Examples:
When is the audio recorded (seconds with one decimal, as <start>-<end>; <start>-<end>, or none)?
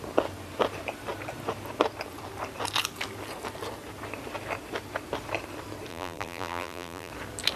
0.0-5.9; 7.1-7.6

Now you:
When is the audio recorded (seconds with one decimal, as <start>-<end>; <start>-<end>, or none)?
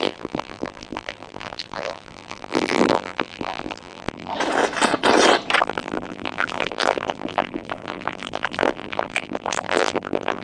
4.3-5.6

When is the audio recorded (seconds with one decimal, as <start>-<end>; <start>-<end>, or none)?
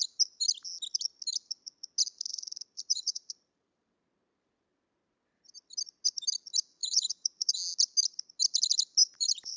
0.0-2.3; 3.9-6.8; 7.5-9.0